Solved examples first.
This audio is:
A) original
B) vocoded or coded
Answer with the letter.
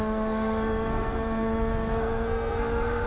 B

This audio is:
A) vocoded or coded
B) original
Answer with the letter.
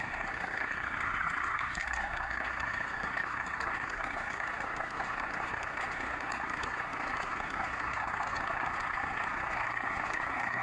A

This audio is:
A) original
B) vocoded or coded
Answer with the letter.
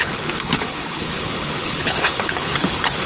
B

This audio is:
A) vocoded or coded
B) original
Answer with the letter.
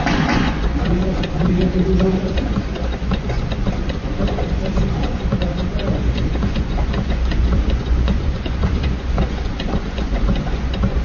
A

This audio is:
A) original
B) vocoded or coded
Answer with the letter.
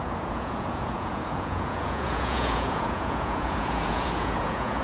B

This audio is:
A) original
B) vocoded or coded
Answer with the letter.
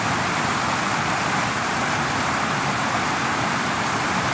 A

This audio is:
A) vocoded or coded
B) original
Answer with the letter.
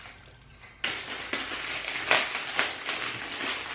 B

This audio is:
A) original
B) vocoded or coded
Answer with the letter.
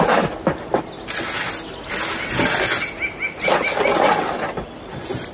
A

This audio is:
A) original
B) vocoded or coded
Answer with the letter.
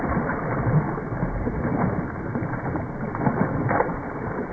A